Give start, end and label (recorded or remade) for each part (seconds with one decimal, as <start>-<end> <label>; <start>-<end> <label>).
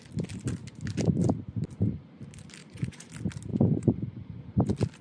0.0-2.6 recorded; 2.6-3.1 remade; 3.1-3.5 recorded; 3.5-4.5 remade; 4.5-5.0 recorded